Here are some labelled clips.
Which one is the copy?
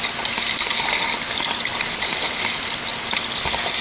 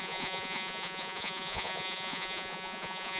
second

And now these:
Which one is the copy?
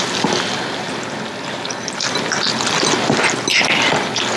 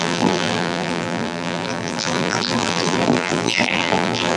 second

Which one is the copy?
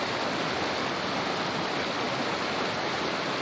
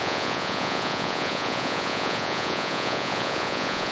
second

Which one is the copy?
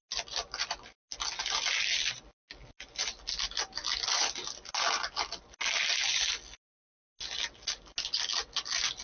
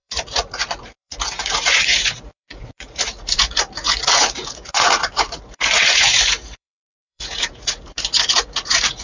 second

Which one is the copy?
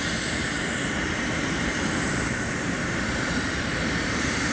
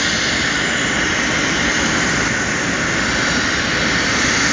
first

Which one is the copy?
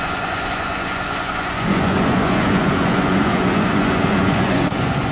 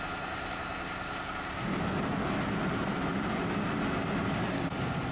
first